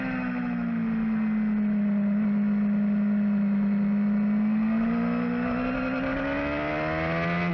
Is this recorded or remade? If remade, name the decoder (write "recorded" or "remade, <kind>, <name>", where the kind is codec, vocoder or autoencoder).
recorded